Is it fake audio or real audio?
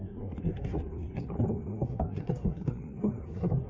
fake